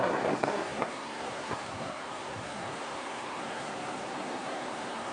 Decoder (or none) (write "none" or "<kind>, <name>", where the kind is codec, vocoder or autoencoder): codec, SNAC